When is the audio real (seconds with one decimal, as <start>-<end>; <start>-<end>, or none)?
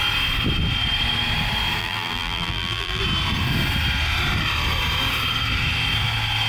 0.0-1.8; 3.0-6.5